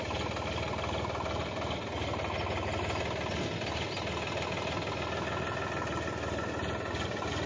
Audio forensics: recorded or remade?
recorded